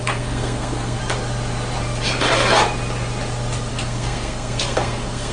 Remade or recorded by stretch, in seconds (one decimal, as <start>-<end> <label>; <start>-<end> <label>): 0.0-1.0 remade; 1.0-3.7 recorded; 3.7-5.3 remade